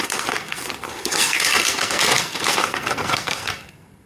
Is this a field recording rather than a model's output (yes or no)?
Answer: no